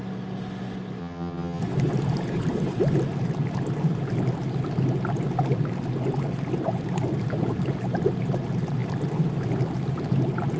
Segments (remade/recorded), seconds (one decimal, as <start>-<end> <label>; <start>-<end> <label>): 0.0-1.0 recorded; 1.0-1.6 remade; 1.6-10.6 recorded